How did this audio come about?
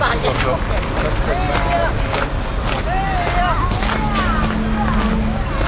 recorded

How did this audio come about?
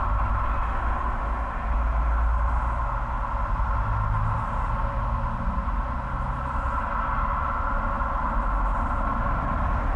recorded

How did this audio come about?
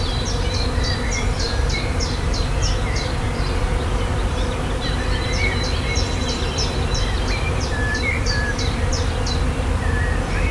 remade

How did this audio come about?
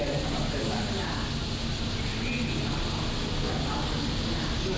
recorded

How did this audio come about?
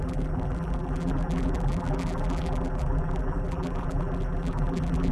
remade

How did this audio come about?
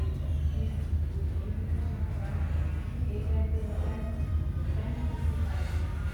recorded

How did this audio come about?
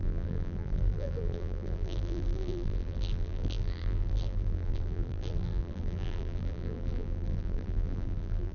remade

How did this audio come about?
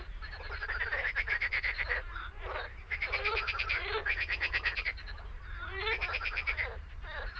remade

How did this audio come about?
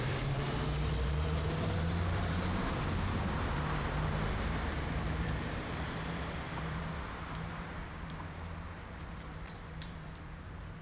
remade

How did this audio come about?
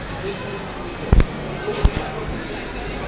recorded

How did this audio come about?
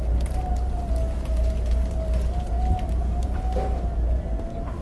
recorded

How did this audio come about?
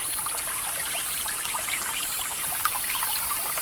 remade